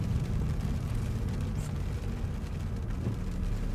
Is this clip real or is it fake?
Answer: real